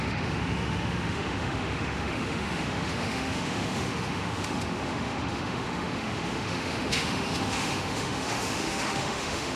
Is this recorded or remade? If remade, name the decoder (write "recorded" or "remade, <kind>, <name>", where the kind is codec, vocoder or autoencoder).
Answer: remade, autoencoder, DAC-VAE